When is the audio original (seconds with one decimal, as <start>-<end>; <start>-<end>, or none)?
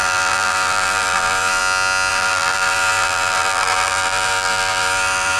1.6-2.1